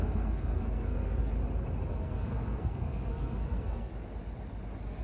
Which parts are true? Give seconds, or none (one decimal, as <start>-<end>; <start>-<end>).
1.3-1.9; 3.9-5.0